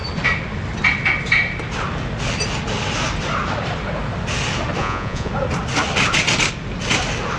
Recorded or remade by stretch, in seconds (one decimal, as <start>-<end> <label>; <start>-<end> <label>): 0.0-4.8 recorded; 4.8-5.3 remade; 5.3-7.4 recorded